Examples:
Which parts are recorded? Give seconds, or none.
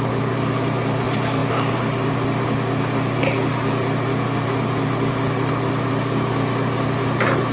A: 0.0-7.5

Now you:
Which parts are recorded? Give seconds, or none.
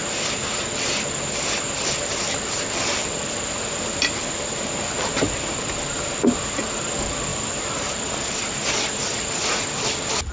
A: 0.0-10.3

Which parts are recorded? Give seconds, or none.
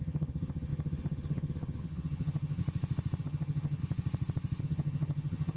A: 2.6-3.2; 3.8-4.6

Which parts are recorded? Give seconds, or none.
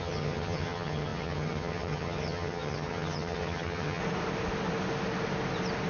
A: 4.0-5.9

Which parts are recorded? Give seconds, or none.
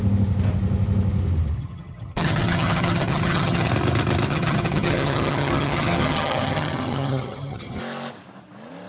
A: 0.0-1.6; 3.7-4.3; 7.8-8.9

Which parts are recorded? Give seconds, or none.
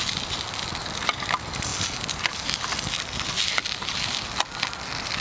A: 0.0-5.2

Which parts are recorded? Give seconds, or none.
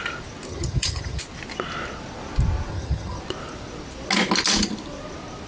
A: 0.0-0.5; 1.2-2.7; 3.2-5.5